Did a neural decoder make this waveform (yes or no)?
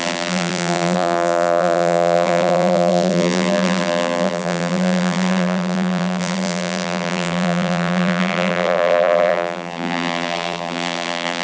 yes